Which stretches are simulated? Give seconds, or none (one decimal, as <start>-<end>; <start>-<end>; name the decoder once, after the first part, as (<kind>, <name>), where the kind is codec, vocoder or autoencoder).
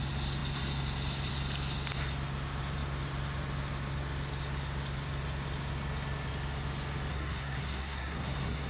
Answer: 7.1-8.7 (codec, SNAC)